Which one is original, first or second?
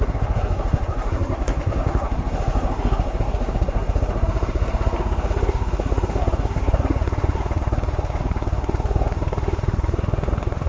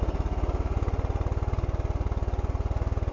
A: second